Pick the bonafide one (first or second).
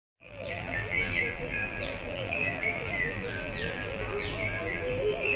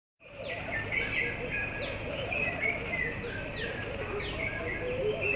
second